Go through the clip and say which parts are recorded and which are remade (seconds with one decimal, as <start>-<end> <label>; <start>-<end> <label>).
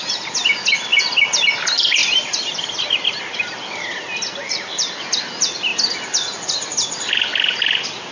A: 0.0-8.1 recorded